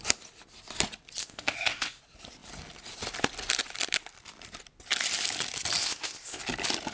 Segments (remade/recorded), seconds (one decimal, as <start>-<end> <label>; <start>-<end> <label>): 0.0-1.2 recorded; 1.2-2.0 remade; 2.0-5.8 recorded; 5.8-6.4 remade; 6.4-6.9 recorded